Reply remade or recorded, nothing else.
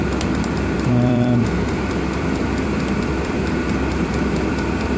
remade